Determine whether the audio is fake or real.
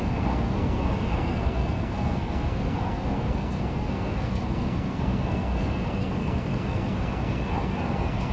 fake